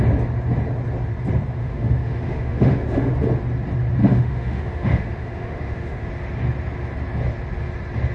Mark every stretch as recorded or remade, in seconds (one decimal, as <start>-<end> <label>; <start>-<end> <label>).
0.0-1.6 recorded; 1.6-3.1 remade; 3.1-4.0 recorded; 4.0-6.1 remade; 6.1-8.1 recorded